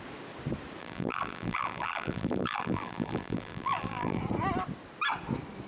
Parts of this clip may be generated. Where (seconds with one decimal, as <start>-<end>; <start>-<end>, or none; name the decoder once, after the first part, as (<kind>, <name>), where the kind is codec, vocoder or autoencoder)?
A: 0.8-4.2 (vocoder, BigVGAN v2)